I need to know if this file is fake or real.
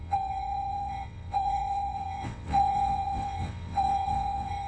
fake